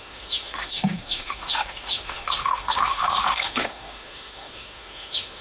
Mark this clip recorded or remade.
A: remade